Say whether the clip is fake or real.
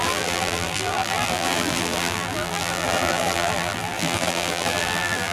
fake